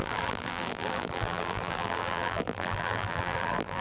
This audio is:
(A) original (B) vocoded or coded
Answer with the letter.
B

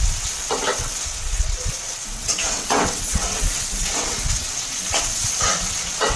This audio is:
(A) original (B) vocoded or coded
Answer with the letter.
B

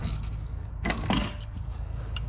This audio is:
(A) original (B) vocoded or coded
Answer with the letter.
B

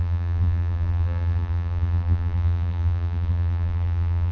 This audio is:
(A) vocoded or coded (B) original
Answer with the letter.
A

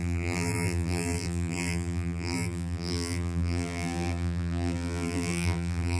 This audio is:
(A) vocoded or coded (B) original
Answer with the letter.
A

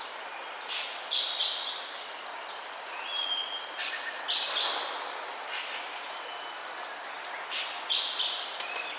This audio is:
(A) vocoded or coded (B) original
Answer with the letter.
B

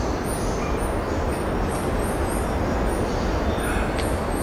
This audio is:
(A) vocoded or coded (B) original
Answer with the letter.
B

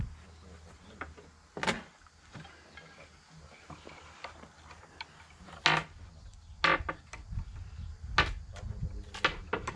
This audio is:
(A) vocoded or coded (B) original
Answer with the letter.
B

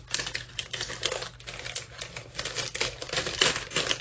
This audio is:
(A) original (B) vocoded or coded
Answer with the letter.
A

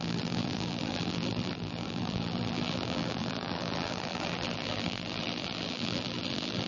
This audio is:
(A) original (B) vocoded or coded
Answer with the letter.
B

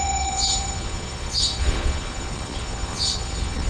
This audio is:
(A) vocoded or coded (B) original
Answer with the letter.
A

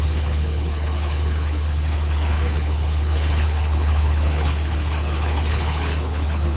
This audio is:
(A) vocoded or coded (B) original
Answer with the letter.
A